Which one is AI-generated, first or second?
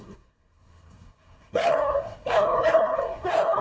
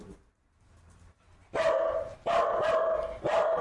first